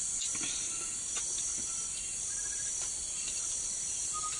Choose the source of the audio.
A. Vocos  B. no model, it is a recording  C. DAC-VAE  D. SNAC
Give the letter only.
B